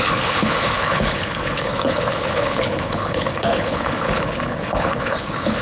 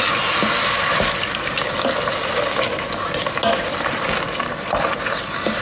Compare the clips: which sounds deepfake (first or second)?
first